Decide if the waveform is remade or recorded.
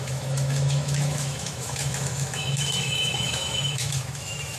remade